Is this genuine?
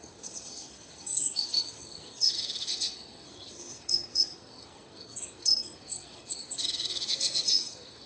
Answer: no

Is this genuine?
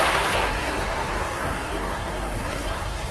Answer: no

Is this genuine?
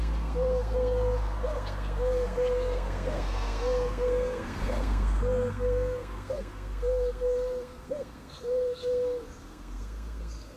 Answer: no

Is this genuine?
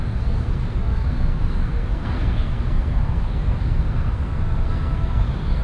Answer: no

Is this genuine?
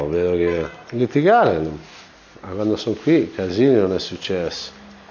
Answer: yes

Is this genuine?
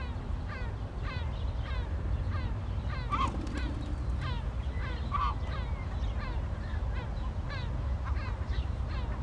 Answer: yes